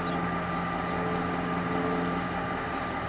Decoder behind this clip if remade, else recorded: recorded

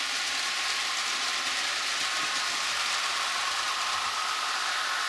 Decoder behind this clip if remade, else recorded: recorded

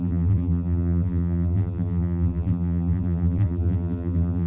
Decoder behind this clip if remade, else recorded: remade, vocoder, BigVGAN v2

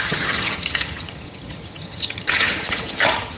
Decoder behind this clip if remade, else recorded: remade, vocoder, HiFi-GAN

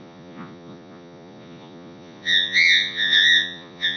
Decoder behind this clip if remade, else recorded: remade, vocoder, Vocos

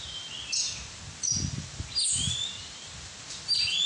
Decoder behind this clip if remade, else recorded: recorded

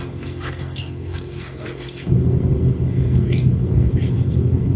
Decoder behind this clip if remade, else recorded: remade, codec, SNAC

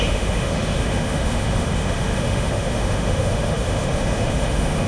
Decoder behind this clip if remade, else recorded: remade, autoencoder, DAC-VAE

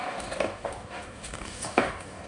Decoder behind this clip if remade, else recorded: remade, codec, DAC